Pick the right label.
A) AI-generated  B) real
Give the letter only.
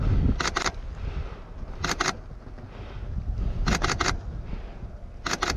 B